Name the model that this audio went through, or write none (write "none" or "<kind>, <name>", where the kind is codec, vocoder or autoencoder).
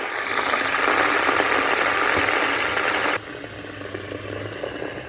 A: none